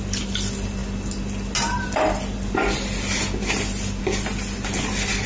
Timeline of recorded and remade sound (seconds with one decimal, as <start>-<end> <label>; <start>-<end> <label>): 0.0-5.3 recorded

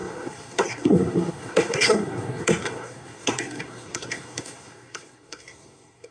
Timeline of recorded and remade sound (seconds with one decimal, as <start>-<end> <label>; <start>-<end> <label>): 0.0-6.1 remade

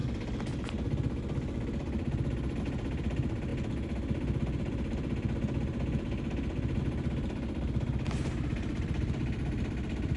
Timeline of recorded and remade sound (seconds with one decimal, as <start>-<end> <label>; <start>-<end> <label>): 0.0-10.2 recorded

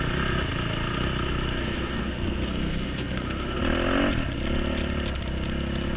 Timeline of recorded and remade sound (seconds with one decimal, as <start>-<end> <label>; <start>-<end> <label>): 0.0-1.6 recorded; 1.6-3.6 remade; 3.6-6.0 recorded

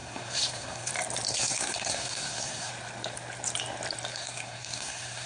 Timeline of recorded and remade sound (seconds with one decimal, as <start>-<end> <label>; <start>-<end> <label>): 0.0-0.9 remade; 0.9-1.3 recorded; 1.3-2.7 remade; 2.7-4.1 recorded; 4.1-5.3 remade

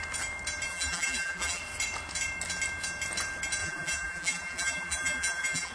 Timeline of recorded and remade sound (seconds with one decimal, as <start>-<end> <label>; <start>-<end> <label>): 0.0-0.7 recorded; 0.7-1.6 remade; 1.6-3.6 recorded; 3.6-5.7 remade